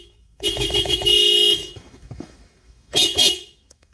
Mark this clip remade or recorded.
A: remade